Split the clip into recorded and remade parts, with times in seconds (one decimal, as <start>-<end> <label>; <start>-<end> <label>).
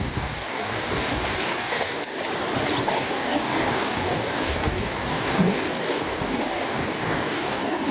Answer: 0.0-2.1 remade; 2.1-2.8 recorded; 2.8-7.9 remade